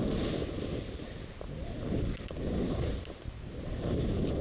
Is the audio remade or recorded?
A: recorded